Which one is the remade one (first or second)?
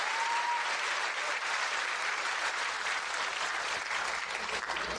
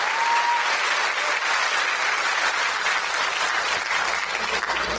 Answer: first